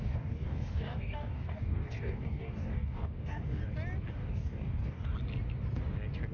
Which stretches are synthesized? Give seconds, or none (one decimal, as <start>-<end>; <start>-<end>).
0.0-3.6; 4.1-5.1